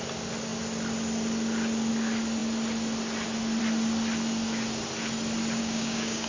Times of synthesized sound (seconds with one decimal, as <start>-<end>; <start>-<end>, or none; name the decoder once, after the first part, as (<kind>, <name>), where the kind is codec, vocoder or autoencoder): 5.6-6.3 (codec, DAC)